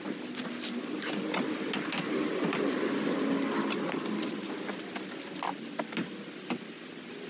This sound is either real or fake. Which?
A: real